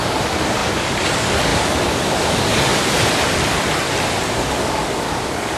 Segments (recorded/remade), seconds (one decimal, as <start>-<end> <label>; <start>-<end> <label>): 0.0-2.7 remade; 2.7-4.3 recorded; 4.3-5.6 remade